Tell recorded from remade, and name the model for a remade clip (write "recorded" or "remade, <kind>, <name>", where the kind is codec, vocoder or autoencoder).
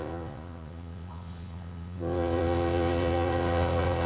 remade, vocoder, Vocos